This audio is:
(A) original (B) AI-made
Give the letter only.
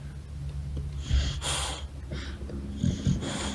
A